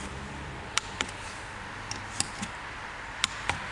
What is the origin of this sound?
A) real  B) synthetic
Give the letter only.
B